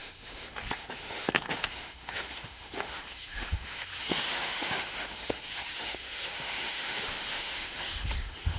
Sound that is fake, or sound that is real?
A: fake